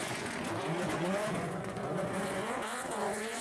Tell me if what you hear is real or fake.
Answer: fake